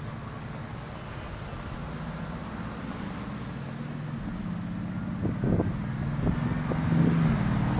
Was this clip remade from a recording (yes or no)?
no